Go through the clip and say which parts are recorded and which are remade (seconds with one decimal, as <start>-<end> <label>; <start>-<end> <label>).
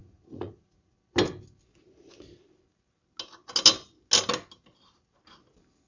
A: 0.0-0.9 remade; 0.9-5.9 recorded